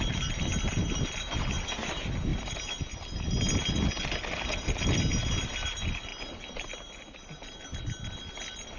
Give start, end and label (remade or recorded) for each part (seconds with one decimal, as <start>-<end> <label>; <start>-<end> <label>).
0.0-8.8 recorded